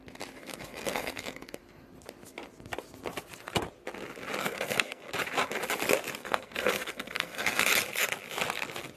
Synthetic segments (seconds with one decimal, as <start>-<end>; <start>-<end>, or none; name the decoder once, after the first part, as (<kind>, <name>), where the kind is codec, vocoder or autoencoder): 0.4-1.6 (codec, SNAC); 4.4-5.1; 6.2-7.6